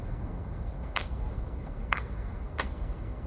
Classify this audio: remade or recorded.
remade